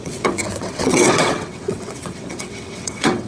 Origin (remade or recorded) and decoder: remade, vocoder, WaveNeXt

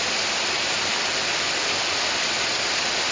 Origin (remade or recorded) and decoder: recorded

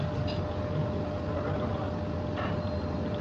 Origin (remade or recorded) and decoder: recorded